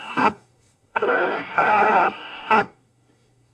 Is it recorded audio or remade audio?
remade